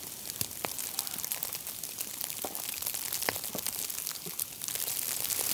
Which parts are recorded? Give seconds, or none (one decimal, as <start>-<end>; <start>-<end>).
0.0-5.5